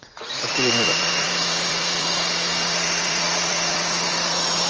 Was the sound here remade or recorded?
remade